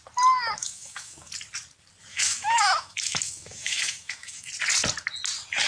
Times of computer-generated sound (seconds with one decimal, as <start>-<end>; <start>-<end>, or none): 0.6-1.3; 2.1-4.5